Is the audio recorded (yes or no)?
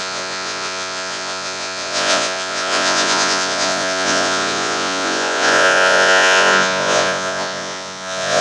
no